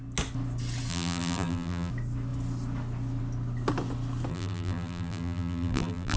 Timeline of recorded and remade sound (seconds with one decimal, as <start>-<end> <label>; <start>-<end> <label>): 0.0-0.9 recorded; 0.9-1.9 remade; 1.9-4.3 recorded; 4.3-6.2 remade